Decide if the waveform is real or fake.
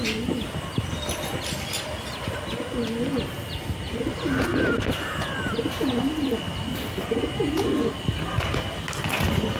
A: real